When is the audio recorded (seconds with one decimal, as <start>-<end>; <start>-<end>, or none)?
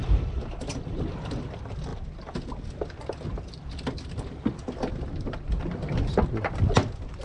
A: 0.0-7.2